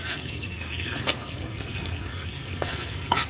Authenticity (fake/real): fake